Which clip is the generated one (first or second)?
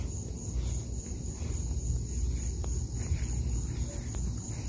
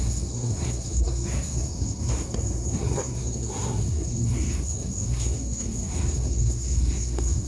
second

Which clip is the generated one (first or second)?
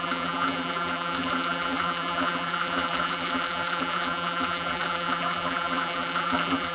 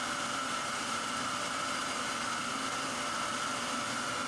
first